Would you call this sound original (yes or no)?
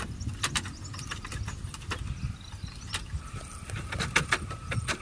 yes